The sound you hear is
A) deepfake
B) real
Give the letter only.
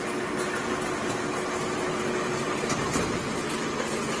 B